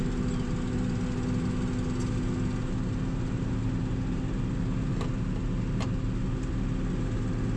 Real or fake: real